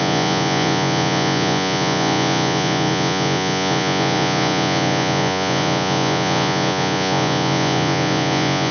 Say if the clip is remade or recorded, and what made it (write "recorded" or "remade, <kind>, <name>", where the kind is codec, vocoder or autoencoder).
remade, vocoder, Vocos